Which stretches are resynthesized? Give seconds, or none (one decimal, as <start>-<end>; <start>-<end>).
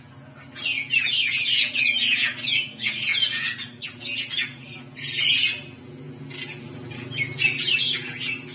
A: none